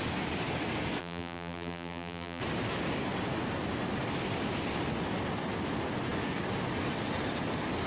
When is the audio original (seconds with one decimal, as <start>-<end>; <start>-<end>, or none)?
0.0-1.0; 2.4-7.9